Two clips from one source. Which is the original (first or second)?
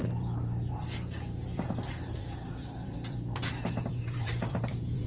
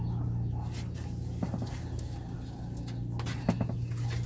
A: second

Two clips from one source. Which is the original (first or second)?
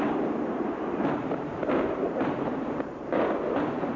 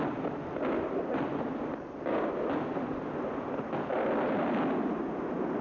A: second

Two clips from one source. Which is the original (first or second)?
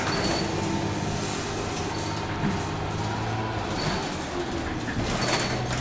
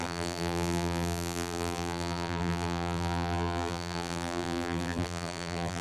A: first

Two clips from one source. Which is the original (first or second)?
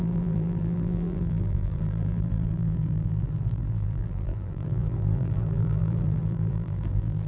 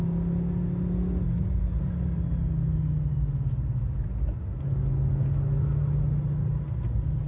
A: second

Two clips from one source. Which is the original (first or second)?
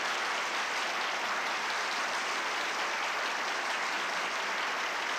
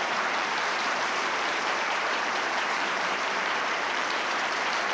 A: first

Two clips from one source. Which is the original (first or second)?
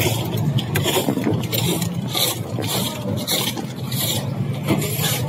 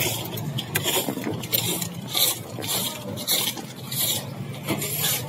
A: second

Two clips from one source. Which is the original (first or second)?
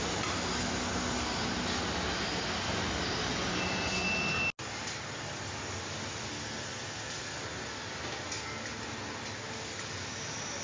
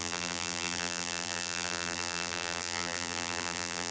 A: first